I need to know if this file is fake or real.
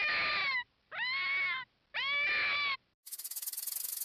real